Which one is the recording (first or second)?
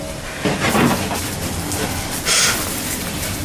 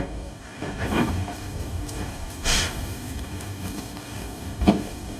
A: first